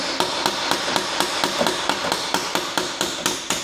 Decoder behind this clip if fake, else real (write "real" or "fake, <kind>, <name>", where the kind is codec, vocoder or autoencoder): real